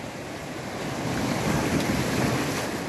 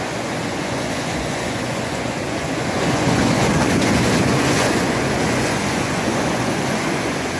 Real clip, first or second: first